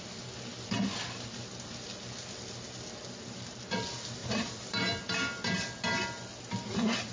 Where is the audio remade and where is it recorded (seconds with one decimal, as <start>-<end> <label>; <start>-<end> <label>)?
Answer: 0.0-7.1 recorded